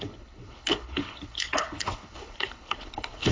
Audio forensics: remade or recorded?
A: remade